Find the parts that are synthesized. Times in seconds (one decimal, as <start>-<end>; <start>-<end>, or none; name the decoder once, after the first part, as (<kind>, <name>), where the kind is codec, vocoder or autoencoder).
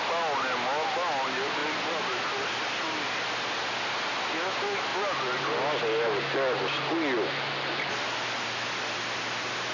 none